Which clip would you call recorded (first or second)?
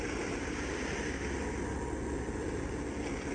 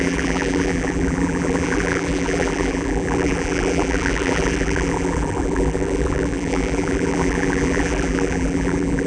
first